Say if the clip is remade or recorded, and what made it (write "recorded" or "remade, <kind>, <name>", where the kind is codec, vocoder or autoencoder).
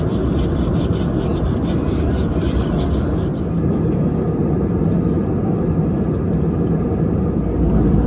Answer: recorded